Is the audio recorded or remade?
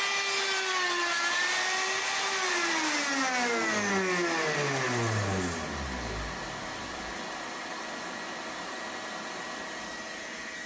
recorded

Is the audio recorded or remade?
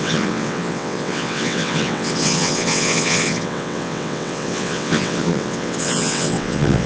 remade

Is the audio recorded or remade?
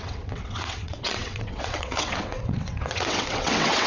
remade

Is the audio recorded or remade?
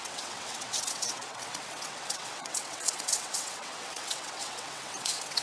remade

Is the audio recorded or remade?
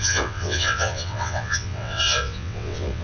remade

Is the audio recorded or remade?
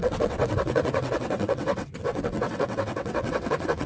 remade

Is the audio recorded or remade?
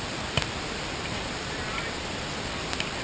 recorded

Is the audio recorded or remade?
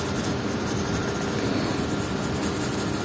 recorded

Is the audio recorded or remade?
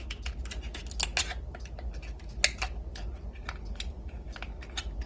recorded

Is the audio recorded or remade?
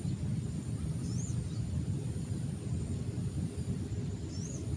recorded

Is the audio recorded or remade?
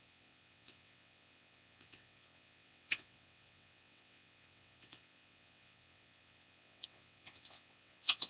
remade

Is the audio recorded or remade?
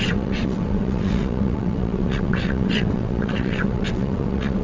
remade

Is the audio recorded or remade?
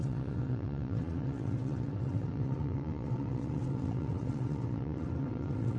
remade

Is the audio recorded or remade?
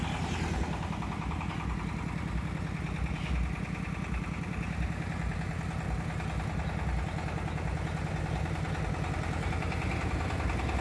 recorded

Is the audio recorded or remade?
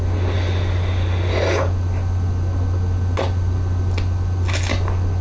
recorded